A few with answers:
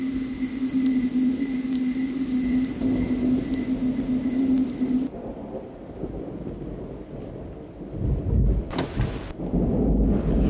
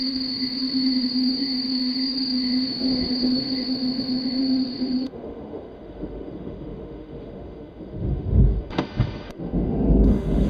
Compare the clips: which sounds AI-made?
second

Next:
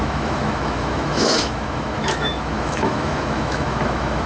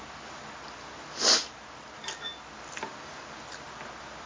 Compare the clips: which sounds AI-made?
first